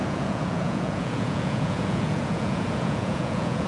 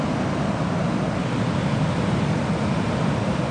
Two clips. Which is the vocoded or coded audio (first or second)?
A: first